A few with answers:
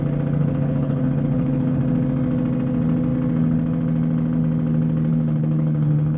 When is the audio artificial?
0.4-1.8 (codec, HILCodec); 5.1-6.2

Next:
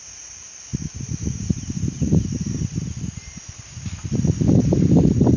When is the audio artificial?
none

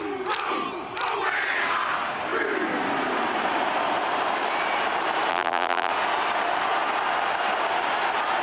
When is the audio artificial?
5.3-5.9 (vocoder, BigVGAN v2)

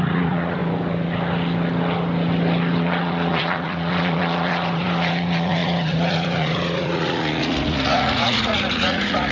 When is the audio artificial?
0.0-0.6 (vocoder, Vocos); 2.8-9.3